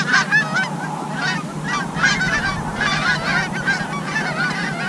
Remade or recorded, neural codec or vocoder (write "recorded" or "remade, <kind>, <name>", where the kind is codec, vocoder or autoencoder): recorded